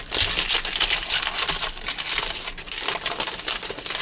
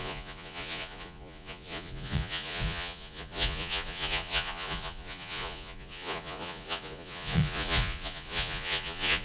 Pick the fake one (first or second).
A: second